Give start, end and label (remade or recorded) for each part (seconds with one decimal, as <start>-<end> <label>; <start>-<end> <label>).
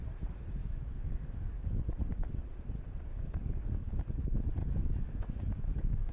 0.0-0.6 recorded; 0.6-1.8 remade; 1.8-3.1 recorded; 3.1-3.9 remade; 3.9-4.6 recorded; 4.6-6.1 remade